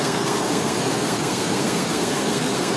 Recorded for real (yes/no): no